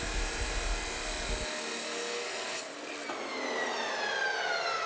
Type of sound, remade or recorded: recorded